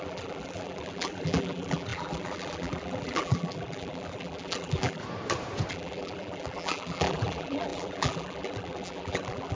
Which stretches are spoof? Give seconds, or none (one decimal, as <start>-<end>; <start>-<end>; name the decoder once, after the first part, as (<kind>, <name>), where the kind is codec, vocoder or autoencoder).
0.0-5.0 (vocoder, BigVGAN v2); 5.7-9.5